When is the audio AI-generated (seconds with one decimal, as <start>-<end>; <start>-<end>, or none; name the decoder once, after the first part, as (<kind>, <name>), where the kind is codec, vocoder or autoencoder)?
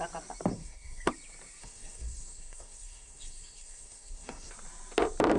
0.5-1.1 (codec, SNAC); 1.6-4.5